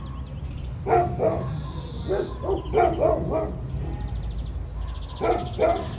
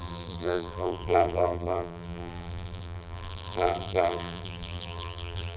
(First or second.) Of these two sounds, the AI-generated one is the second